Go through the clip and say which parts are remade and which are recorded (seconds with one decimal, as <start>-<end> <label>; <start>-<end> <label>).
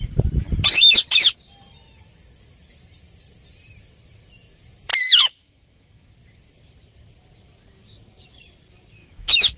0.0-4.9 recorded; 4.9-6.1 remade; 6.1-9.0 recorded; 9.0-9.6 remade